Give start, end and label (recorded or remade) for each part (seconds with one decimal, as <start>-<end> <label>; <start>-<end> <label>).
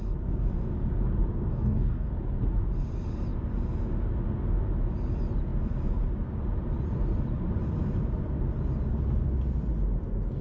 0.0-1.5 recorded; 1.5-2.1 remade; 2.1-10.4 recorded